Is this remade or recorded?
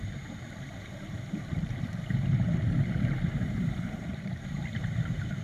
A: remade